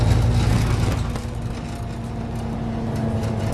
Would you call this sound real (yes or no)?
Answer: yes